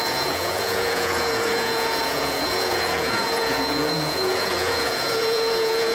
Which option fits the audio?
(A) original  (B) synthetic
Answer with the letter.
B